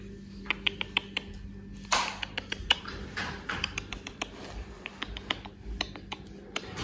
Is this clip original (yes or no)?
yes